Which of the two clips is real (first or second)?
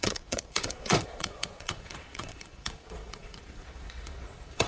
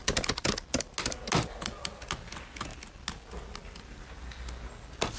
second